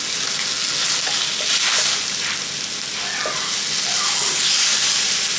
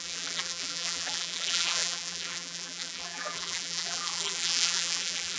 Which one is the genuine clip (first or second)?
first